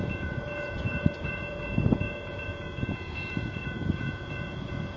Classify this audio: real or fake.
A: fake